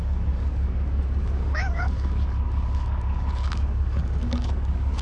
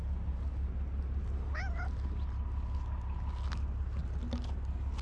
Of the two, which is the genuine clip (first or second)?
second